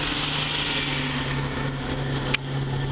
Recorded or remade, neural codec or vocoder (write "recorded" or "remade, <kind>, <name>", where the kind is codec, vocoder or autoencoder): recorded